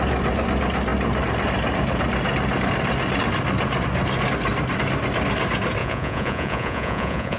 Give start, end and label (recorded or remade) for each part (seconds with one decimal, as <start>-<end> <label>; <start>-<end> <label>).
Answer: 0.0-5.8 recorded; 5.8-7.4 remade